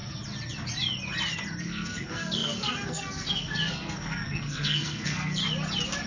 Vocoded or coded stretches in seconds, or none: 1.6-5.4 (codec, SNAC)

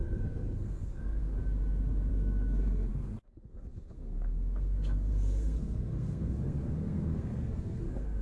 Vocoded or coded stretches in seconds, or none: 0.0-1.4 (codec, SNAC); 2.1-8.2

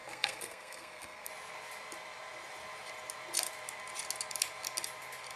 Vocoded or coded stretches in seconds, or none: 0.0-1.3 (codec, SNAC)

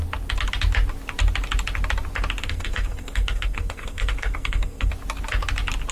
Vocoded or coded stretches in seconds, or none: 2.4-4.9 (codec, SNAC)

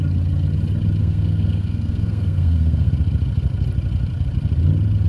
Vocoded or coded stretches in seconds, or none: 1.0-2.9 (codec, SNAC)